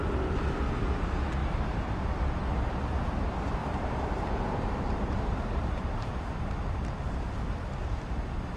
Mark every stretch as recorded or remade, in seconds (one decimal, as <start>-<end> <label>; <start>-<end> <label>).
0.0-3.6 recorded; 3.6-8.2 remade; 8.2-8.6 recorded